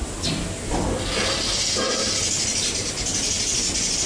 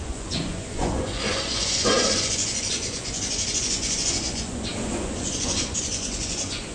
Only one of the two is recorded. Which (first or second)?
first